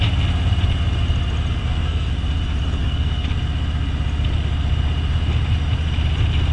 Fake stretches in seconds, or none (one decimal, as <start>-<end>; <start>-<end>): 1.6-2.1; 2.8-3.3